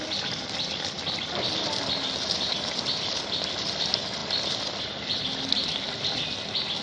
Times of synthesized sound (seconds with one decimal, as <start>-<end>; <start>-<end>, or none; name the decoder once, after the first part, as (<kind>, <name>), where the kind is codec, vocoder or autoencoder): none